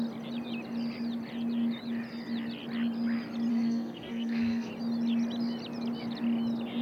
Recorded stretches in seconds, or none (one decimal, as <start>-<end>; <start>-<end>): 0.0-3.5; 4.7-6.8

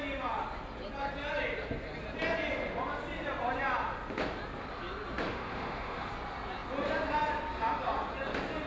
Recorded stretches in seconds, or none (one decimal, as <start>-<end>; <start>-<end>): 0.0-5.3; 6.1-8.7

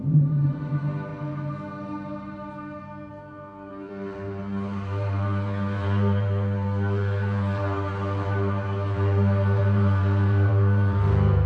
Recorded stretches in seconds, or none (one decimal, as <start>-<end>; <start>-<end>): 1.1-3.1

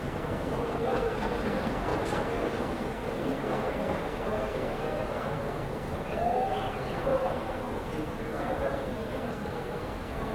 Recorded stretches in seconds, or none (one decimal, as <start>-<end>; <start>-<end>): none

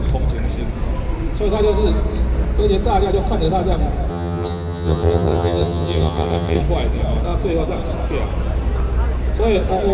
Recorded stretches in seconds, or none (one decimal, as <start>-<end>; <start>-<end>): 0.0-4.1; 6.6-9.9